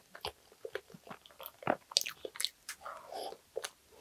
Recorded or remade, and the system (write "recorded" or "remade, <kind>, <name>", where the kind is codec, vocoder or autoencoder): recorded